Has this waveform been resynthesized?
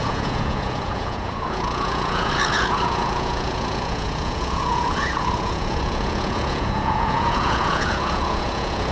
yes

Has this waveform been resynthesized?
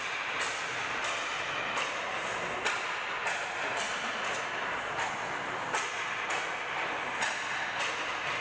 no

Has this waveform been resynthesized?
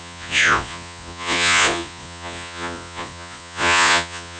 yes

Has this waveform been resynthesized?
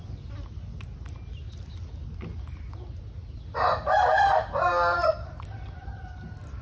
no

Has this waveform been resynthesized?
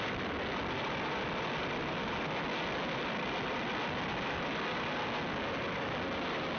no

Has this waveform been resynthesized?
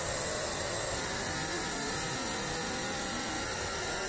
no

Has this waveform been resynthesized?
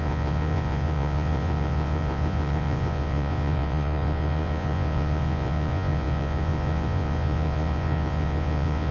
yes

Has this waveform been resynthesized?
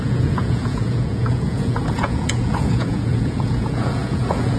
yes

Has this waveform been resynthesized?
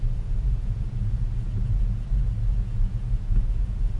yes